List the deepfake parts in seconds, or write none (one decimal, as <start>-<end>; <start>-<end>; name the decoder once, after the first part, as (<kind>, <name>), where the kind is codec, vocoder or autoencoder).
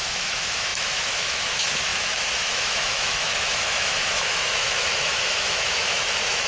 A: 0.0-6.5 (autoencoder, DAC-VAE)